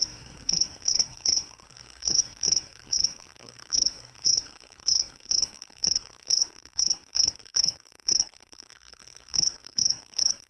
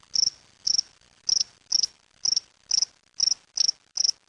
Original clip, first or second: second